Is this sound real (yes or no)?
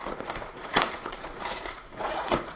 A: no